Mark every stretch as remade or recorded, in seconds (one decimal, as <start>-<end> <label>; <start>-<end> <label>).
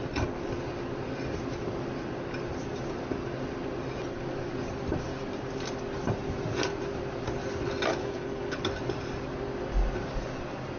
0.0-8.0 recorded; 8.0-8.6 remade; 8.6-10.8 recorded